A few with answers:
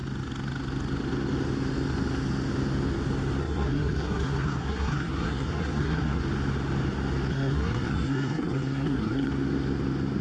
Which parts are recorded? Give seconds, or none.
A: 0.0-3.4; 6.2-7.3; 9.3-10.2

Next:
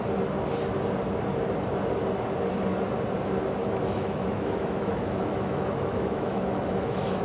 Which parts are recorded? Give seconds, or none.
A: 0.0-3.6

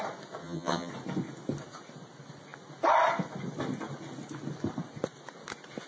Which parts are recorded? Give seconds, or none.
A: 0.0-0.4; 0.9-5.9

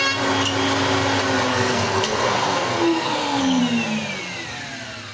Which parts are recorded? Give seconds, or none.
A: 0.0-1.5; 3.6-5.1

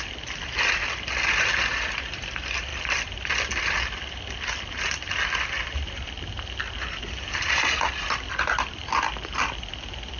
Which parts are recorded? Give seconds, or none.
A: 0.0-10.2

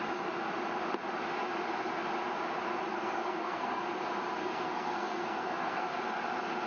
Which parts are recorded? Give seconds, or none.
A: 0.0-2.9; 3.8-4.4; 6.0-6.7